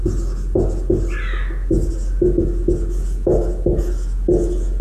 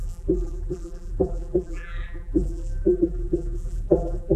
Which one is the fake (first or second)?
second